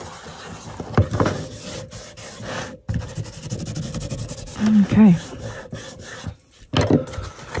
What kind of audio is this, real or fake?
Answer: real